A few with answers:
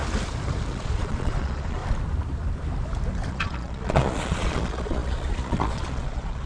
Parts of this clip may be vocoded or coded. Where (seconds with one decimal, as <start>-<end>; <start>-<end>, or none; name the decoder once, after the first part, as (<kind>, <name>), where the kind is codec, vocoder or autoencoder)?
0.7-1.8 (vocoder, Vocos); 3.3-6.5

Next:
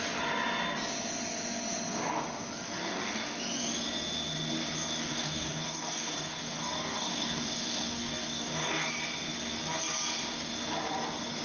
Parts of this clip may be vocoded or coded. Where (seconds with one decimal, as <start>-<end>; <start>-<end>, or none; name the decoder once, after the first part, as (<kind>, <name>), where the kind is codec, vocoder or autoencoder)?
2.8-3.4 (codec, DAC); 5.0-8.9

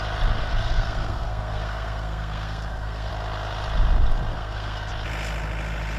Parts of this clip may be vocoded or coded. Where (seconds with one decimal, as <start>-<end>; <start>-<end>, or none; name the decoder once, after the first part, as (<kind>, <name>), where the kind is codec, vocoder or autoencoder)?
0.4-3.1 (codec, SNAC); 4.3-4.9

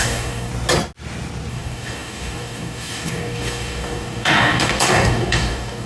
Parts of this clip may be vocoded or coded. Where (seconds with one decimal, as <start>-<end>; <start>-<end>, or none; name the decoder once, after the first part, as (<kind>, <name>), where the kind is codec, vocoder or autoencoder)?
0.0-0.5 (codec, DAC); 1.5-5.9

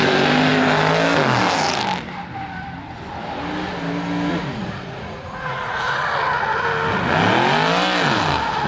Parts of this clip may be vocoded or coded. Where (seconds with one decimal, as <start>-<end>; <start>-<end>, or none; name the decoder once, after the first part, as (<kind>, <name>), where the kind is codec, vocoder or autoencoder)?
4.3-6.0 (vocoder, Vocos)

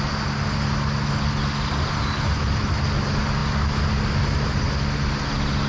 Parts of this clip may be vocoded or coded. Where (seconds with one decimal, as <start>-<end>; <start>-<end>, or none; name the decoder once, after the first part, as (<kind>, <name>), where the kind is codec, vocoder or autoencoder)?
none

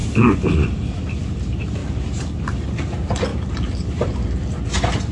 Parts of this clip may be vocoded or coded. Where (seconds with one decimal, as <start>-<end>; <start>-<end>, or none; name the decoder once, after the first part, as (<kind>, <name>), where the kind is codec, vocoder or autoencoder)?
0.0-1.0 (vocoder, BigVGAN v2); 3.3-4.6